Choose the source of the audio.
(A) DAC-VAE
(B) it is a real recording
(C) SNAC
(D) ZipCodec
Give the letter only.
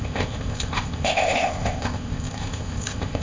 D